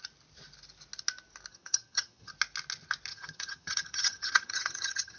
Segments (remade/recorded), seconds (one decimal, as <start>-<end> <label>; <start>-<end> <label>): 0.0-1.5 recorded; 1.5-2.3 remade; 2.3-3.1 recorded; 3.1-5.2 remade